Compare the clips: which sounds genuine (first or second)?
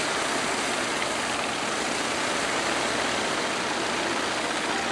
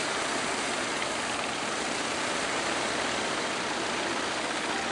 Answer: first